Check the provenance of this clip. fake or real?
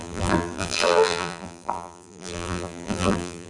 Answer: fake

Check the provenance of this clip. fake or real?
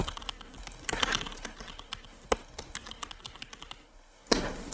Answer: real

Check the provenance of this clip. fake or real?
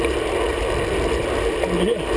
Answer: real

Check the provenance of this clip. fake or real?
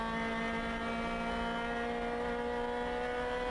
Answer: real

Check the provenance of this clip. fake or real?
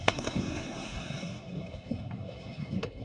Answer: fake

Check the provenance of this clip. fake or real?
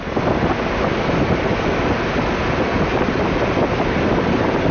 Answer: real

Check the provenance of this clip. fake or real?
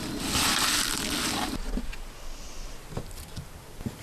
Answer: real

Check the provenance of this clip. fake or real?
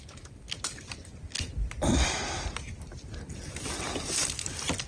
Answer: real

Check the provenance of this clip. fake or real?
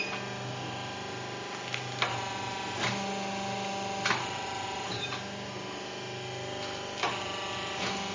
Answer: real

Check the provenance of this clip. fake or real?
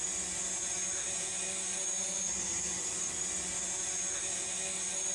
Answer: real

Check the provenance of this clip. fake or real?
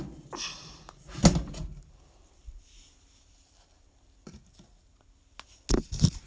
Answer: real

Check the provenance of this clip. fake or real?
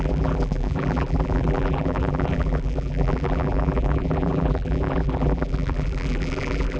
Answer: fake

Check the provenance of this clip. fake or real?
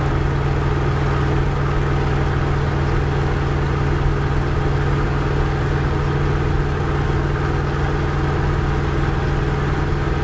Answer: real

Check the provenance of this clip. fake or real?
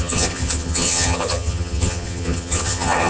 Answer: fake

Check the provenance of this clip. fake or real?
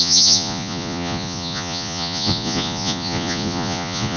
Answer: fake